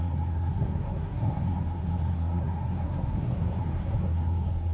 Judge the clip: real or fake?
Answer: fake